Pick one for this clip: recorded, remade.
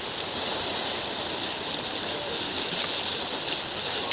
recorded